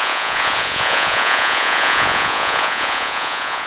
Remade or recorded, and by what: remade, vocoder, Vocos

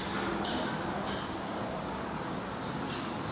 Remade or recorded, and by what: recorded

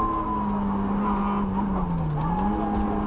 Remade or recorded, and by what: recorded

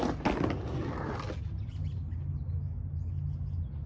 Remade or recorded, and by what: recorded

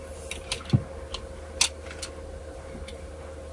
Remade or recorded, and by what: recorded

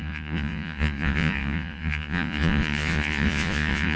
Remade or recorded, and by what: remade, vocoder, Vocos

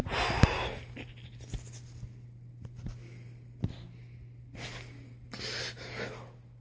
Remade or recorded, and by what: recorded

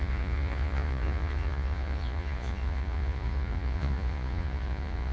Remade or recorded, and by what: remade, vocoder, Vocos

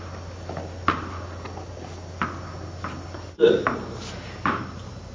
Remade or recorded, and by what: recorded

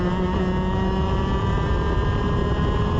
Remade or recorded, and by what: recorded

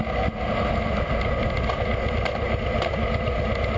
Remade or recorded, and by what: recorded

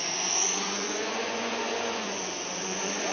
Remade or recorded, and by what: remade, vocoder, Vocos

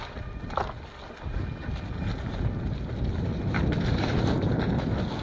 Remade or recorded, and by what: recorded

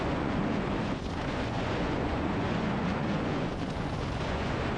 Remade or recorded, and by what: remade, vocoder, Vocos